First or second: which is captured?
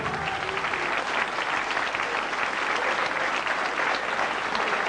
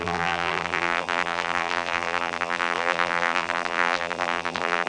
first